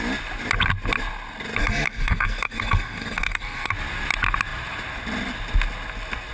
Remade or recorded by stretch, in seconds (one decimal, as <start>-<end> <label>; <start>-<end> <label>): 0.0-1.6 recorded; 1.6-3.7 remade; 3.7-6.3 recorded